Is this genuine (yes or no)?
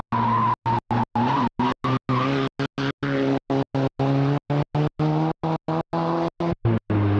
yes